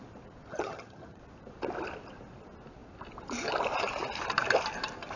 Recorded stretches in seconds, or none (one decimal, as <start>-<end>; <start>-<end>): 0.0-0.5; 1.2-5.2